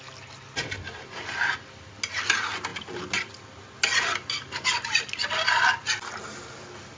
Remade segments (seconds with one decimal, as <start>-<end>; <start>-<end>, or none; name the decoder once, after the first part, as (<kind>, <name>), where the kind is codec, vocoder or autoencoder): none